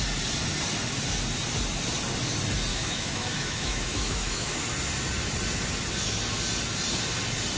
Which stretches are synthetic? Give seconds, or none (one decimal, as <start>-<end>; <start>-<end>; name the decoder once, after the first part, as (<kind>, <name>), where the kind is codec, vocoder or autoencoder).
2.7-4.6 (autoencoder, DAC-VAE)